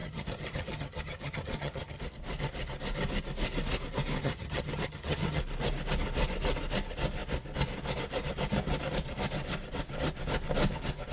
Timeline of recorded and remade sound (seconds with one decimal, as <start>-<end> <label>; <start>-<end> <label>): 0.0-2.0 remade; 2.0-4.2 recorded; 4.2-5.4 remade; 5.4-11.1 recorded